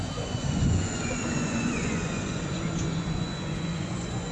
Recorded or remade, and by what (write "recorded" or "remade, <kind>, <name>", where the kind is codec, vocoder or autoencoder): remade, vocoder, Vocos